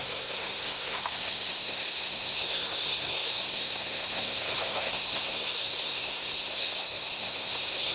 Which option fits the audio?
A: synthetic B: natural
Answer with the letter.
A